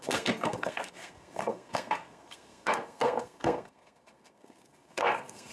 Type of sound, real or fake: fake